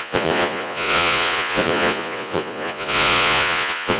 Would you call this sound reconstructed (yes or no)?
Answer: yes